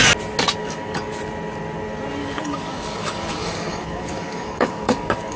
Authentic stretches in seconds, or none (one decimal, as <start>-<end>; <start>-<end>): 0.0-0.6; 1.2-2.2